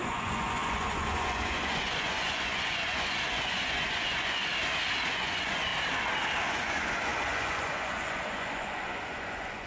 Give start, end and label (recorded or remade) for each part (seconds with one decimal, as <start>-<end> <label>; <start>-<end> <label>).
0.0-4.5 remade; 4.5-5.1 recorded; 5.1-5.7 remade; 5.7-6.5 recorded; 6.5-9.7 remade